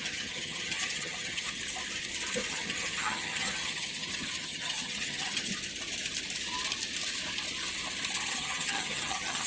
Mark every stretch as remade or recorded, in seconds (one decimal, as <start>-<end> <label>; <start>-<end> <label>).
0.0-1.6 remade; 1.6-2.5 recorded; 2.5-5.5 remade; 5.5-8.3 recorded; 8.3-9.5 remade